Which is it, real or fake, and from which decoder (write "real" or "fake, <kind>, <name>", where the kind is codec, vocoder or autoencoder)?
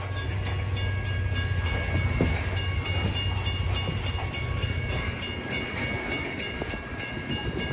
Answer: real